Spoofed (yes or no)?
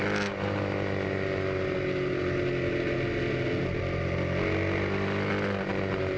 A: no